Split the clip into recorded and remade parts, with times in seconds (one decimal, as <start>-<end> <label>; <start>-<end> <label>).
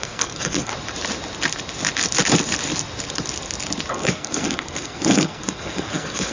0.0-0.7 remade; 0.7-3.9 recorded; 3.9-6.3 remade